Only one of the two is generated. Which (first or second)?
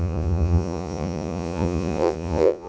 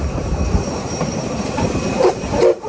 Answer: first